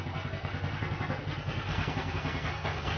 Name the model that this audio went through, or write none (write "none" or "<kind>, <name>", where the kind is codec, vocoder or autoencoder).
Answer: codec, SNAC